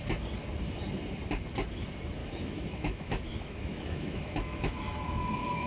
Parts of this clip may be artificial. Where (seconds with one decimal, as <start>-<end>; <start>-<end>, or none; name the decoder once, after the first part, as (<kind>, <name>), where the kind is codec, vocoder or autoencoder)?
2.2-5.7 (autoencoder, DAC-VAE)